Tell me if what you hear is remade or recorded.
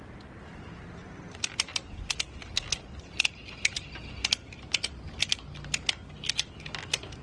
recorded